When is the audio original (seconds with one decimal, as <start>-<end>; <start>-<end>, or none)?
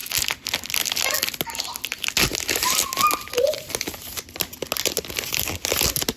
0.0-6.2